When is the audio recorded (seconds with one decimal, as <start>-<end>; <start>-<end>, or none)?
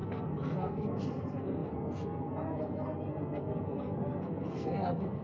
none